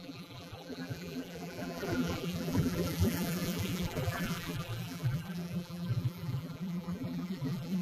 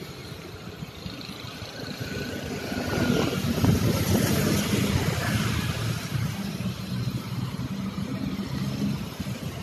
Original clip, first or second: second